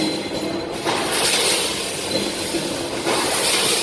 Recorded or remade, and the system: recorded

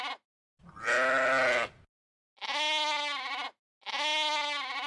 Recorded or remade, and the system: recorded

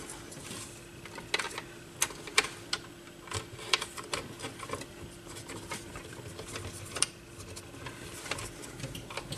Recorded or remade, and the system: recorded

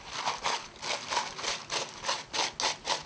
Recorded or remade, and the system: recorded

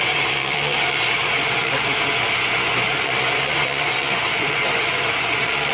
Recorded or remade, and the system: remade, vocoder, Vocos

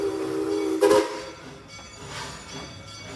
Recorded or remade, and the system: recorded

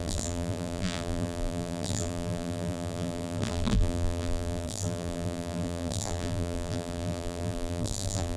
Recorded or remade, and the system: remade, vocoder, BigVGAN v2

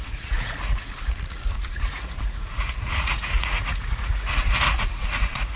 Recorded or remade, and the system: remade, vocoder, Vocos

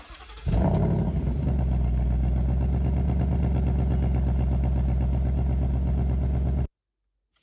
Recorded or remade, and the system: recorded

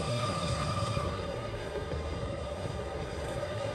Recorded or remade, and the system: remade, codec, SNAC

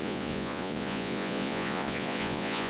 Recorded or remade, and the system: remade, vocoder, Vocos